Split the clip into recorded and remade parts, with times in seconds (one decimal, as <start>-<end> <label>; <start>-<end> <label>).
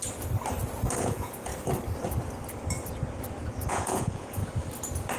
0.0-1.0 recorded; 1.0-1.5 remade; 1.5-3.7 recorded; 3.7-4.4 remade; 4.4-5.2 recorded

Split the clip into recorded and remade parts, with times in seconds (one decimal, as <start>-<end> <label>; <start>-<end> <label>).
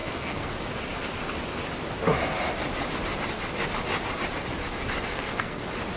0.0-0.5 remade; 0.5-5.1 recorded; 5.1-5.6 remade; 5.6-6.0 recorded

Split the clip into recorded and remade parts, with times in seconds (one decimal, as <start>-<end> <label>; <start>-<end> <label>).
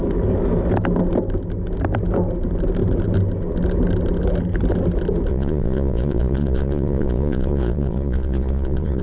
0.0-5.3 recorded; 5.3-9.0 remade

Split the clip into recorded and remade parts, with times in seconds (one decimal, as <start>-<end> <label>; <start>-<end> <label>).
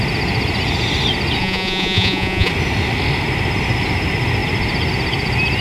0.0-1.4 recorded; 1.4-2.5 remade; 2.5-5.6 recorded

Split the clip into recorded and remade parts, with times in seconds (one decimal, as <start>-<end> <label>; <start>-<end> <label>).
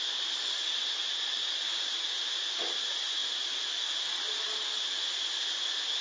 0.0-6.0 recorded